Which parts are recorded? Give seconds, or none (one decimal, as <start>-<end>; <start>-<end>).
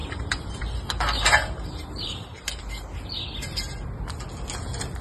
2.6-5.0